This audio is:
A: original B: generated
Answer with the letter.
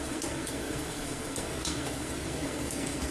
B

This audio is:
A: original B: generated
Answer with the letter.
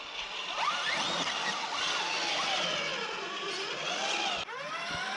A